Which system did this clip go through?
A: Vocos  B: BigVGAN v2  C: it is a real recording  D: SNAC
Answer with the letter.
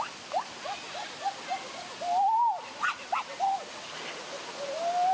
C